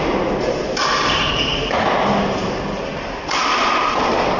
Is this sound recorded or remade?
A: recorded